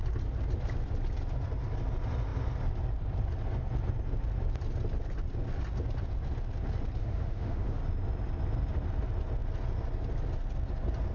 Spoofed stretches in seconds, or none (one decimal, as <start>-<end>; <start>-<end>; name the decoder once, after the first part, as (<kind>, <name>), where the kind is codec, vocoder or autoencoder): 7.0-7.8 (autoencoder, DAC-VAE)